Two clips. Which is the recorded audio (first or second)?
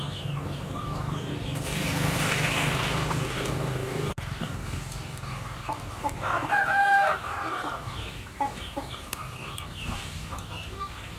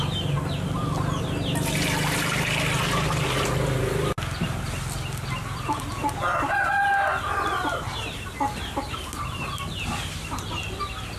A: second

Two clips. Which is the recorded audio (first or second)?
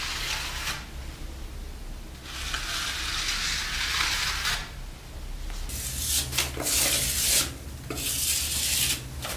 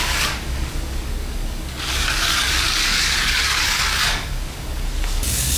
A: first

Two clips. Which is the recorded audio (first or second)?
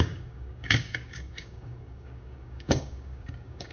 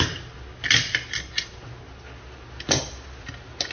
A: second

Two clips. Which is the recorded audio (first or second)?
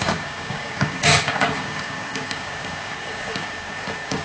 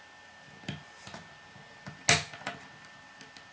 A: second